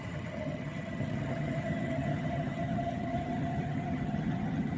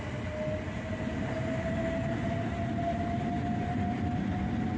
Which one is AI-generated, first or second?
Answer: first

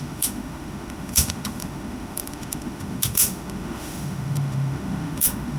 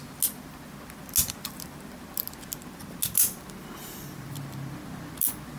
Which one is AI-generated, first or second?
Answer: first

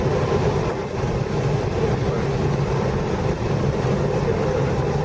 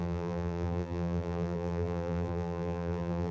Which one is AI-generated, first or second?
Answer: second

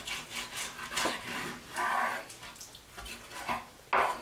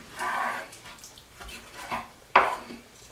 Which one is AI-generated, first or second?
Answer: second